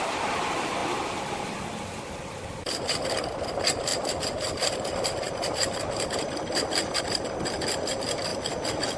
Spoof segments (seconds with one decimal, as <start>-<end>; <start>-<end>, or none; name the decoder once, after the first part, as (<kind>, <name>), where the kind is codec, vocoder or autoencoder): 0.0-8.3 (vocoder, BigVGAN v2)

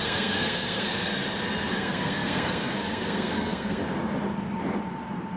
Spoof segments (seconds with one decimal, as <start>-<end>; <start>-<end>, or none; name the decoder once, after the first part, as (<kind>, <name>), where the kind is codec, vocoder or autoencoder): 0.0-1.1 (codec, SNAC); 1.7-3.8

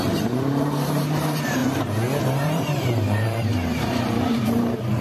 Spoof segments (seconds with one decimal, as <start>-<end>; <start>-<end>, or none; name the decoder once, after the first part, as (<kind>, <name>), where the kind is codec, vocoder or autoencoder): 0.0-1.6 (vocoder, BigVGAN v2); 2.2-5.0